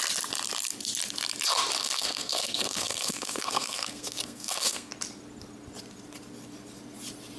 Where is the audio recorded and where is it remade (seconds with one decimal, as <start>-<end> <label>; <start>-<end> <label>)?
0.0-1.8 recorded; 1.8-4.9 remade; 4.9-7.4 recorded